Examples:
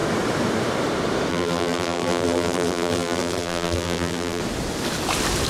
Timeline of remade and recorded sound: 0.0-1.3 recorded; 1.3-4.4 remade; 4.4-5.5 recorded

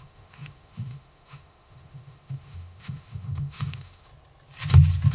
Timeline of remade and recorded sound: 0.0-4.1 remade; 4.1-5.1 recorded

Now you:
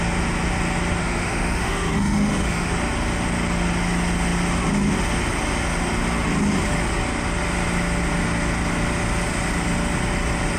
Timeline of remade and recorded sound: 0.0-1.0 recorded; 1.0-2.7 remade; 2.7-10.6 recorded

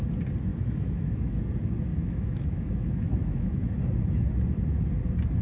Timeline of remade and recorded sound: 0.0-0.5 recorded; 0.5-1.4 remade; 1.4-1.9 recorded; 1.9-3.7 remade; 3.7-5.4 recorded

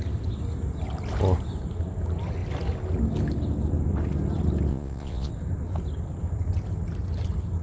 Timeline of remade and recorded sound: 0.0-4.7 recorded; 4.7-5.3 remade; 5.3-7.6 recorded